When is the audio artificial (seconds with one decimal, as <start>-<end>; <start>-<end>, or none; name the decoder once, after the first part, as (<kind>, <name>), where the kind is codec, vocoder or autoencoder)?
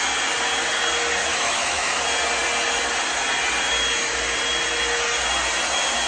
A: 1.3-2.0 (autoencoder, DAC-VAE)